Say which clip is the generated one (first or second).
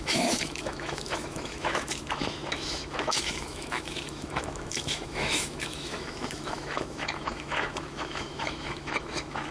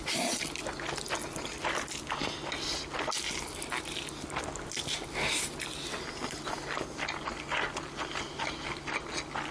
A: first